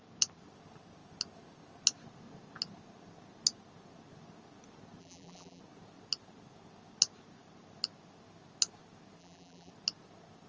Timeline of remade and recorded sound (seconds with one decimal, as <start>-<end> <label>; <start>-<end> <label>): 0.0-5.0 recorded; 5.0-5.6 remade; 5.6-9.2 recorded; 9.2-9.7 remade; 9.7-10.5 recorded

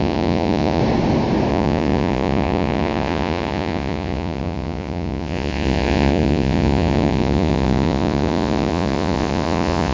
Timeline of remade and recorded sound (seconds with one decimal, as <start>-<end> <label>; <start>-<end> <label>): 0.0-0.8 remade; 0.8-1.5 recorded; 1.5-9.9 remade

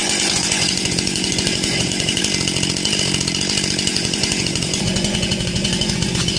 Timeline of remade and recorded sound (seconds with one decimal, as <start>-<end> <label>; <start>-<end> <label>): 0.0-2.2 remade; 2.2-3.9 recorded; 3.9-6.4 remade

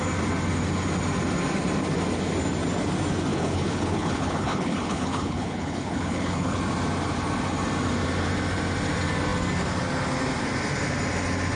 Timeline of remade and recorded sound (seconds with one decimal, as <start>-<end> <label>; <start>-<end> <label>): 0.0-3.3 recorded; 3.3-6.6 remade; 6.6-11.6 recorded

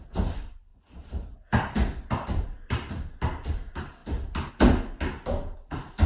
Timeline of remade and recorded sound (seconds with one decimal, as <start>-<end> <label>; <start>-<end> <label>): 0.0-6.1 recorded